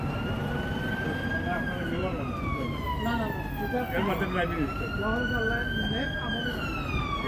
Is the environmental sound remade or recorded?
recorded